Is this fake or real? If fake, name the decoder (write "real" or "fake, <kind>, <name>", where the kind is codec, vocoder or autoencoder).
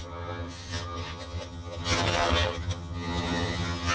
fake, vocoder, HiFi-GAN